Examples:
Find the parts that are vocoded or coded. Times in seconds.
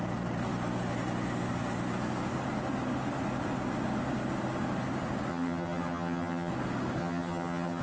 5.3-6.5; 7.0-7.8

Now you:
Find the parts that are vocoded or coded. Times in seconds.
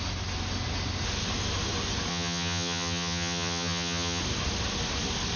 2.1-4.2